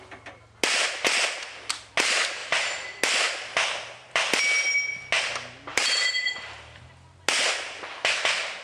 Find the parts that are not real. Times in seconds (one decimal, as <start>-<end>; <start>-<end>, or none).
2.4-3.0; 5.7-6.8